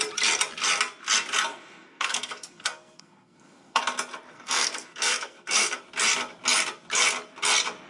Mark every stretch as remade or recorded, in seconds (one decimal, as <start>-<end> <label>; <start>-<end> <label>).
0.0-1.5 recorded; 1.5-3.8 remade; 3.8-4.3 recorded; 4.3-5.8 remade; 5.8-7.9 recorded